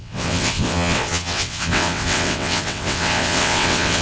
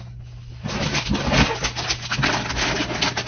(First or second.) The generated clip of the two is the first